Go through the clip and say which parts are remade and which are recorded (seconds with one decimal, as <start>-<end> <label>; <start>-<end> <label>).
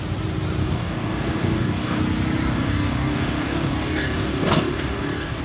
0.0-0.6 recorded; 0.6-2.0 remade; 2.0-2.5 recorded; 2.5-5.4 remade